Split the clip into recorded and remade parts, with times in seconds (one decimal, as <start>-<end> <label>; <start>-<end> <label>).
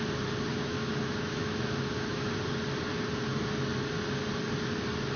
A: 0.0-0.5 recorded; 0.5-2.2 remade; 2.2-5.2 recorded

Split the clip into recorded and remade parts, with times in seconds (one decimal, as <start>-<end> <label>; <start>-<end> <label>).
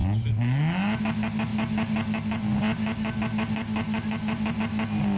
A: 0.0-5.2 recorded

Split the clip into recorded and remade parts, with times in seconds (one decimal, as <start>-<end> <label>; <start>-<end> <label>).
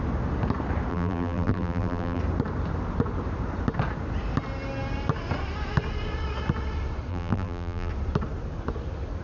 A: 0.0-0.9 recorded; 0.9-2.2 remade; 2.2-7.1 recorded; 7.1-7.9 remade; 7.9-9.2 recorded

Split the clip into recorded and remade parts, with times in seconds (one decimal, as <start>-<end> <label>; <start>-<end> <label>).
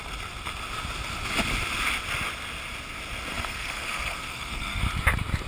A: 0.0-3.3 recorded; 3.3-4.8 remade; 4.8-5.5 recorded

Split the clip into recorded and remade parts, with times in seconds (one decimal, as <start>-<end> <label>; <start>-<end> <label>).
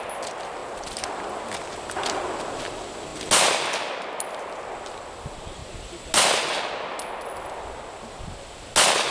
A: 0.0-9.1 recorded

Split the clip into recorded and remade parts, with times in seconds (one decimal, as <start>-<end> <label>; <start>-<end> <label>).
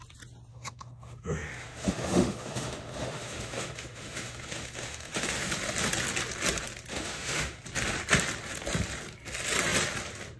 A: 0.0-0.5 recorded; 0.5-5.5 remade; 5.5-6.9 recorded; 6.9-7.6 remade; 7.6-10.4 recorded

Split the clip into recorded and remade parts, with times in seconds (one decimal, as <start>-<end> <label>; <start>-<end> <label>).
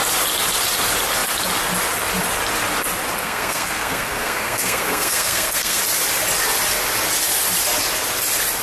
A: 0.0-3.2 recorded; 3.2-5.8 remade; 5.8-8.6 recorded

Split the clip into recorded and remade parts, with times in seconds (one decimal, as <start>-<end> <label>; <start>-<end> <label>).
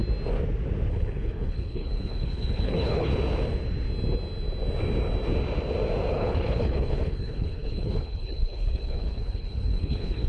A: 0.0-0.9 recorded; 0.9-3.1 remade; 3.1-6.1 recorded; 6.1-10.3 remade